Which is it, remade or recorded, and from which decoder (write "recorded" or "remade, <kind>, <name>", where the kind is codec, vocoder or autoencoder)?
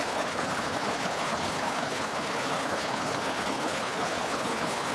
remade, codec, HILCodec